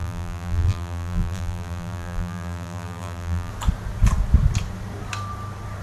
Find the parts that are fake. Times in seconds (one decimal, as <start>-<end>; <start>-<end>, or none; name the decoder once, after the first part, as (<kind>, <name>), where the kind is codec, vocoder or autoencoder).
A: 0.0-3.5 (vocoder, BigVGAN v2)

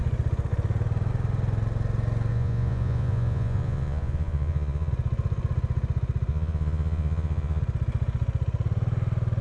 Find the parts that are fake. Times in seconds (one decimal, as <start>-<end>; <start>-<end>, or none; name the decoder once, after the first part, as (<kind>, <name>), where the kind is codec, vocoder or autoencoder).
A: 2.3-4.9 (vocoder, Vocos); 6.3-7.6

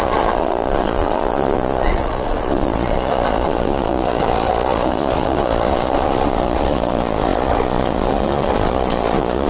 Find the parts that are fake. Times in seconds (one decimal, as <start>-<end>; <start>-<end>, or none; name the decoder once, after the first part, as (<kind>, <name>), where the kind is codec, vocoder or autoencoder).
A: 0.0-9.5 (vocoder, Vocos)

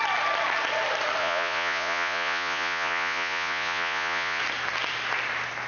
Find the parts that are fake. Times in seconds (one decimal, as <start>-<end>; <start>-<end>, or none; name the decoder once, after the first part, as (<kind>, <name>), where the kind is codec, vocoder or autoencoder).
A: 1.2-4.4 (vocoder, Vocos)